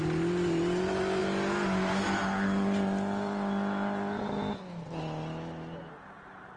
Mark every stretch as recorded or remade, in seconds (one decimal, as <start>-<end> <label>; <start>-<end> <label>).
0.0-6.6 recorded